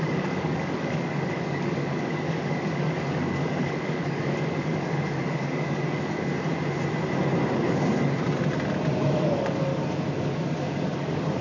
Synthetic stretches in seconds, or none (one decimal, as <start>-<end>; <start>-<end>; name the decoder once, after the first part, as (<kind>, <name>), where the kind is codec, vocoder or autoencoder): 0.0-6.3 (codec, DAC); 9.0-9.7; 10.2-11.4